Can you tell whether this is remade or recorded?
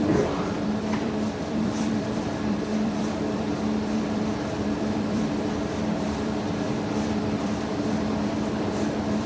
remade